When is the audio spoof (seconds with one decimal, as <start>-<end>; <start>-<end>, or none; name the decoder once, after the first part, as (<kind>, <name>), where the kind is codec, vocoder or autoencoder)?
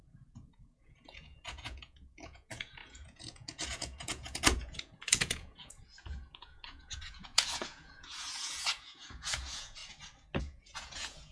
0.0-9.8 (vocoder, Vocos); 10.4-11.3